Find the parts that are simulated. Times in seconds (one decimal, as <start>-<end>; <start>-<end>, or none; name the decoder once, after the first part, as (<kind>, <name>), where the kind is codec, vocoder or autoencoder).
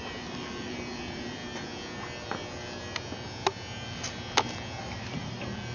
0.0-1.4 (vocoder, BigVGAN v2); 4.8-5.7